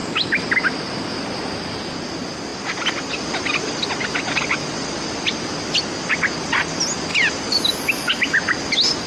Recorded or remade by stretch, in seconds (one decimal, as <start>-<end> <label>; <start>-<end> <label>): 0.0-1.4 remade; 1.4-2.5 recorded; 2.5-5.2 remade; 5.2-7.1 recorded; 7.1-7.7 remade; 7.7-9.1 recorded